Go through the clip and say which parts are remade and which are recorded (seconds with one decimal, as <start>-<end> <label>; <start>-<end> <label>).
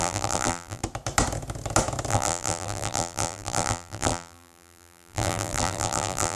0.0-0.8 remade; 0.8-2.1 recorded; 2.1-6.4 remade